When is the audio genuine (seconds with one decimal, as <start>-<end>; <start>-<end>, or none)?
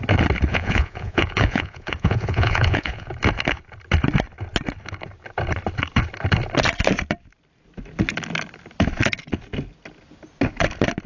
0.0-0.5; 3.1-11.1